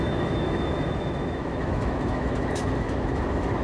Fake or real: fake